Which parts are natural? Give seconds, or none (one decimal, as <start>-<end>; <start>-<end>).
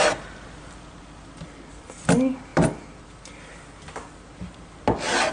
0.0-5.3